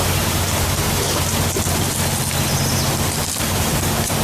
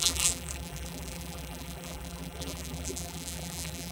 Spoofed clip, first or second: second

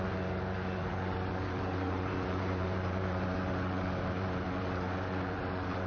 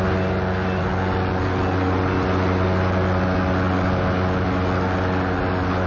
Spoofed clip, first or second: first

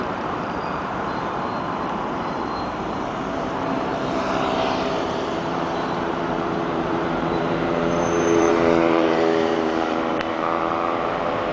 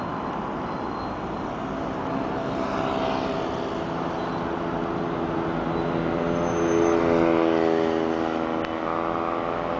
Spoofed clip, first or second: first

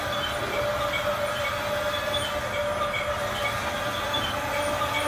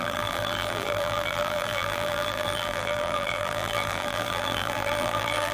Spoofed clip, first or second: second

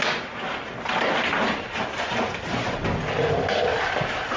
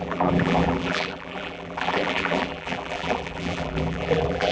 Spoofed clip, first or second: second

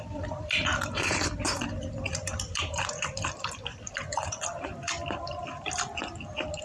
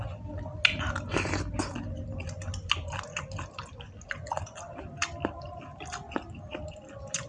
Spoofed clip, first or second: first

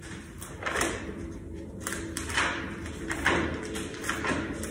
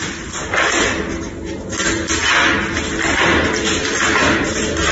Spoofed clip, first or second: first